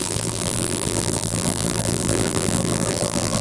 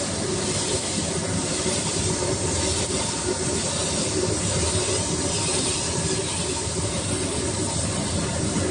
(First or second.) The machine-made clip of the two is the first